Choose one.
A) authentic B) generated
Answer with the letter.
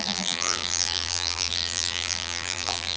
B